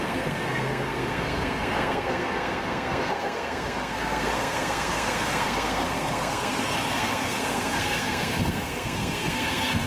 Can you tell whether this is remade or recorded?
remade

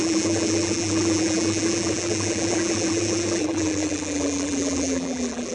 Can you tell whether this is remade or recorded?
remade